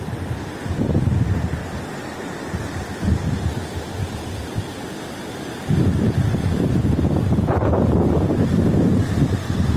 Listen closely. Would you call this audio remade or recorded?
recorded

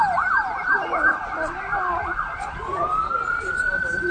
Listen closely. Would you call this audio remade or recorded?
recorded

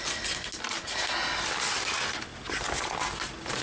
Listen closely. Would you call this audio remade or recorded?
recorded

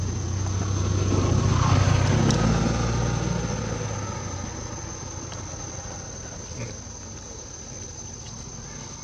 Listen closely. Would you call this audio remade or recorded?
recorded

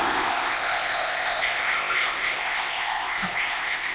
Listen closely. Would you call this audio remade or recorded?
remade